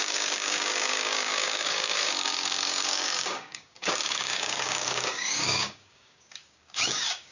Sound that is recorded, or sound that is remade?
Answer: remade